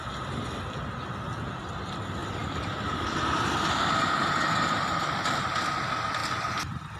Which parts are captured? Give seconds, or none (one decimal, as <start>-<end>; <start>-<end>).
0.0-2.2; 5.5-7.0

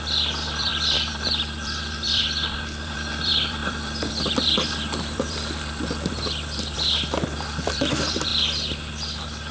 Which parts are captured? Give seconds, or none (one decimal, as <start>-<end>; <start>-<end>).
8.3-9.5

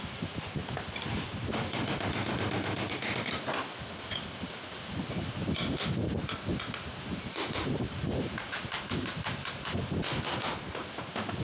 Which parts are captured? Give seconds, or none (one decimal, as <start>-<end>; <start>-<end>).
0.0-6.5; 9.9-11.4

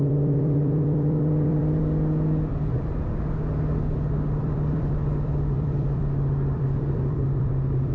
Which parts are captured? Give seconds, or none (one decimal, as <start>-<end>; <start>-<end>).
1.8-4.3

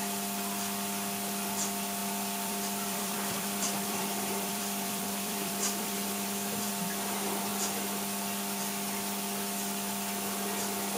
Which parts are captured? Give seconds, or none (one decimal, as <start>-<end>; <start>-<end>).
0.0-2.0; 6.7-11.0

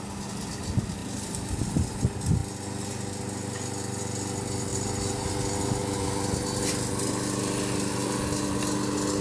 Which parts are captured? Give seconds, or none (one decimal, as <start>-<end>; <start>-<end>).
0.0-1.0; 1.9-4.7; 5.3-9.2